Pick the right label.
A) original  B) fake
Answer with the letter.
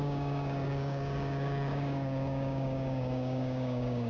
B